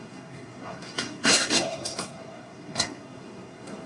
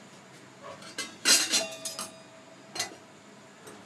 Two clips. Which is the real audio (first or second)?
second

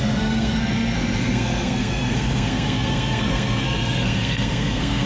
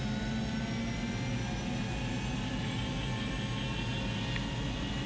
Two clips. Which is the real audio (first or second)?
second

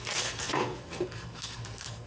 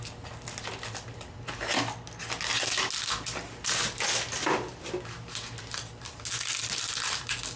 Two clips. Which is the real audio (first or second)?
second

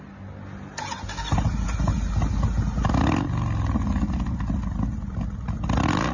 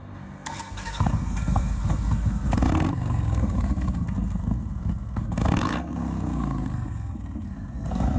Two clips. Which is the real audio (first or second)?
first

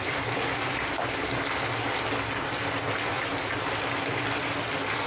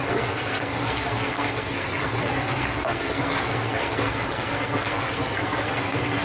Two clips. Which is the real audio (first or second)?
first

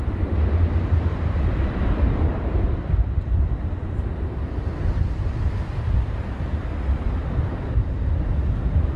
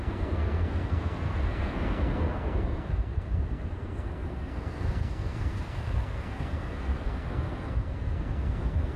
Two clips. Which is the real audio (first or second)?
first